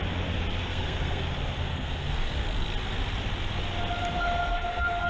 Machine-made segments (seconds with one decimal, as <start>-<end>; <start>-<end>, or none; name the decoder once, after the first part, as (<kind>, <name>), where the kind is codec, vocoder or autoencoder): 0.7-1.2 (codec, SNAC); 1.7-2.3; 4.1-5.1